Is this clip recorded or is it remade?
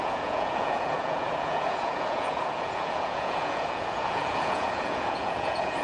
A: remade